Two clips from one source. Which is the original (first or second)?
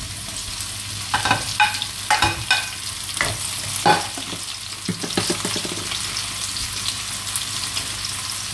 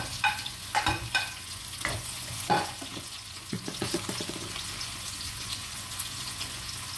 first